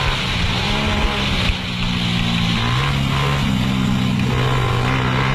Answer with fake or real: real